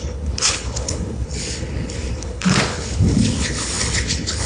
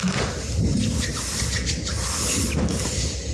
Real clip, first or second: second